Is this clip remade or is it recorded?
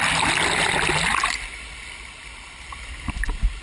recorded